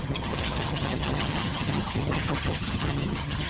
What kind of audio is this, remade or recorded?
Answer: remade